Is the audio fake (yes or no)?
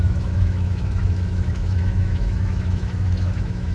yes